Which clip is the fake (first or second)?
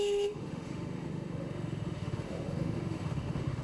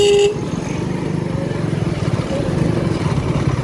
first